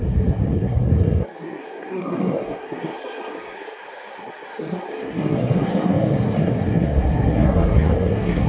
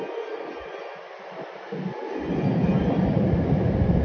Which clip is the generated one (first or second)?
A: first